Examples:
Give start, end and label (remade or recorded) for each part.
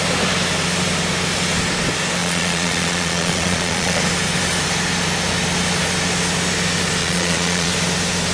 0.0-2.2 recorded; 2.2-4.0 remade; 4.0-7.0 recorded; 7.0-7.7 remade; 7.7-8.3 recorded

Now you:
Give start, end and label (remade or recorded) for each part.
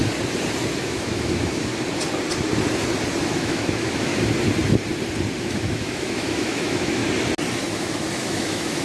0.0-0.8 recorded; 0.8-1.7 remade; 1.7-3.2 recorded; 3.2-4.1 remade; 4.1-5.4 recorded; 5.4-7.0 remade; 7.0-7.7 recorded; 7.7-8.8 remade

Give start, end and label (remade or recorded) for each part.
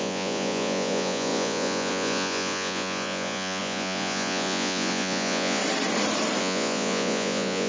0.0-5.6 remade; 5.6-6.4 recorded; 6.4-7.7 remade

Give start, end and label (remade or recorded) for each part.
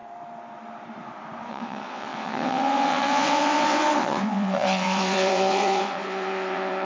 0.0-1.5 recorded; 1.5-6.8 remade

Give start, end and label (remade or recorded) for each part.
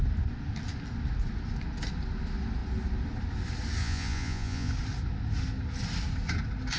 0.0-3.8 recorded; 3.8-4.7 remade; 4.7-6.8 recorded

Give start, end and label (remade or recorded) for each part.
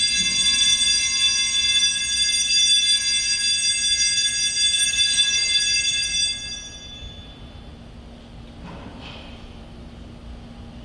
0.0-4.8 recorded; 4.8-7.7 remade; 7.7-8.9 recorded; 8.9-9.9 remade; 9.9-10.8 recorded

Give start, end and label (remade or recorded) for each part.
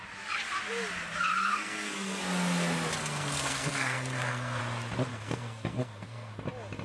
0.0-1.3 recorded; 1.3-2.2 remade; 2.2-3.0 recorded; 3.0-4.6 remade; 4.6-5.1 recorded; 5.1-6.3 remade; 6.3-6.8 recorded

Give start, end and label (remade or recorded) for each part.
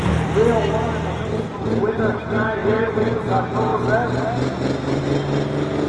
0.0-2.6 recorded; 2.6-3.3 remade; 3.3-5.9 recorded